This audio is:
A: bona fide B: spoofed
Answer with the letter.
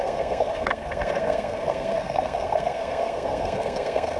B